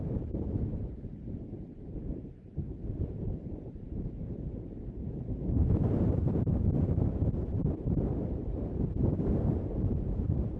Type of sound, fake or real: fake